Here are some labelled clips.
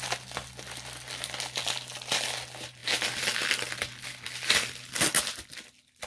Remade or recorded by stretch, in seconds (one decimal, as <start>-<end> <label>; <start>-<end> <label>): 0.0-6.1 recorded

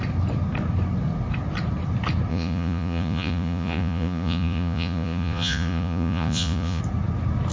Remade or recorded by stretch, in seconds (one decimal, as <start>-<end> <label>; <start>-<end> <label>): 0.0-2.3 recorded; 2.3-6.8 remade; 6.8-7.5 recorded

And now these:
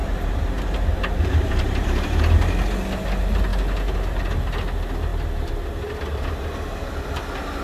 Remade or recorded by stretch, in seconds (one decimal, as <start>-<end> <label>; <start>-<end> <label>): 0.0-2.2 remade; 2.2-5.1 recorded; 5.1-6.3 remade; 6.3-7.6 recorded

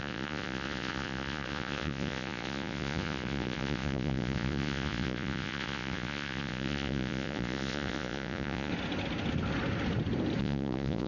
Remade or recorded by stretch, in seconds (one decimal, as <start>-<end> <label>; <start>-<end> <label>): 0.0-8.7 remade; 8.7-10.4 recorded; 10.4-11.1 remade